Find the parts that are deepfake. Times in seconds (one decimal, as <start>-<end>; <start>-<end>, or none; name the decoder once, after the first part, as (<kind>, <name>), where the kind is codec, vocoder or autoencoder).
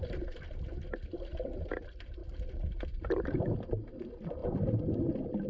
0.5-2.2 (vocoder, BigVGAN v2); 3.1-5.5